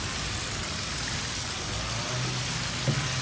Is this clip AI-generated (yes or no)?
no